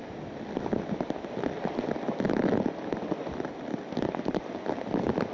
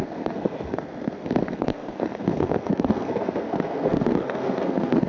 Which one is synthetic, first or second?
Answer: second